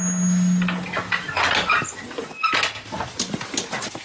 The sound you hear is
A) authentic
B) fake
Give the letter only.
A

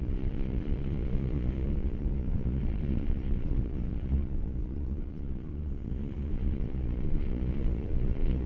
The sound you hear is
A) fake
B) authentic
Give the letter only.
A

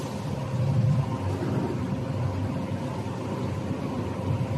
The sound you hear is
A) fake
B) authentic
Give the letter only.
B